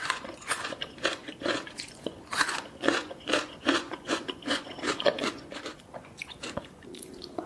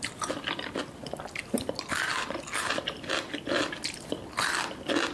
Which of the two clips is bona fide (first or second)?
second